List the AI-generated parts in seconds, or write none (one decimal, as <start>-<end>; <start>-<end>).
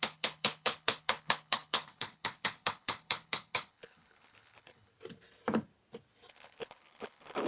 0.0-4.9; 6.3-7.5